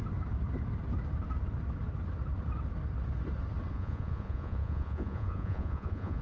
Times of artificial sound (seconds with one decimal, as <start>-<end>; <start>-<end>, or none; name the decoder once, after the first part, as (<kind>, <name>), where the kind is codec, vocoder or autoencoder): 3.7-6.2 (vocoder, Vocos)